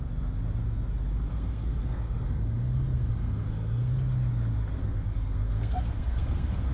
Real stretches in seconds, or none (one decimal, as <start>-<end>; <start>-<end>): 0.0-1.3; 3.9-4.8